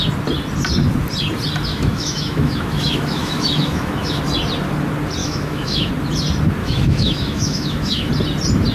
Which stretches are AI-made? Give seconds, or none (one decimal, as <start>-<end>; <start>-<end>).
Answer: 1.7-4.2; 5.2-5.9; 6.6-8.1